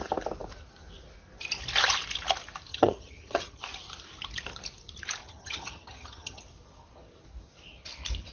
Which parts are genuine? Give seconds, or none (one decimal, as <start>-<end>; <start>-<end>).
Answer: 0.0-2.7; 3.6-5.2; 6.4-8.3